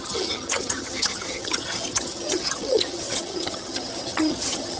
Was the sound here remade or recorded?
remade